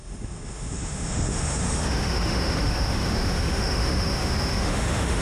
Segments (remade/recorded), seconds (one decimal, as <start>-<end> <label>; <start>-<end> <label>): 0.0-5.2 remade